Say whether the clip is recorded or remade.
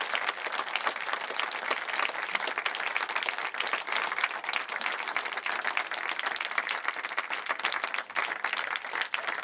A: recorded